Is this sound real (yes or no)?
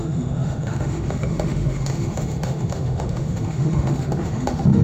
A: no